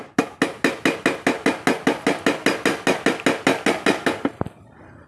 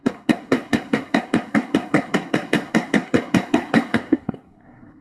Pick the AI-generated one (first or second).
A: second